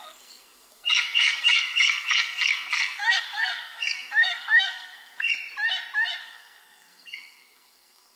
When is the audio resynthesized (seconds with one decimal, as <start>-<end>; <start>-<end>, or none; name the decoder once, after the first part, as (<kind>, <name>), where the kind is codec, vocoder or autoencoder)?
0.0-5.3 (codec, SNAC); 6.2-8.2